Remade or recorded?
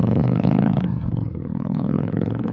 remade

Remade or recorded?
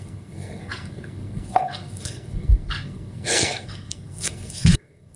remade